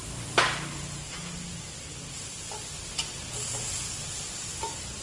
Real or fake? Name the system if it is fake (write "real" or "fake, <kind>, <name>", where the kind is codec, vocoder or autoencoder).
real